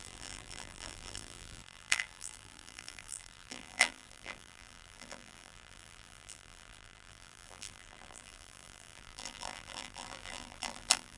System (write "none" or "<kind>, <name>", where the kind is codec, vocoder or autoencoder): vocoder, BigVGAN v2